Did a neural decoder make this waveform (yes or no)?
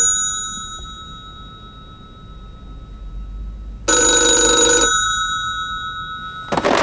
no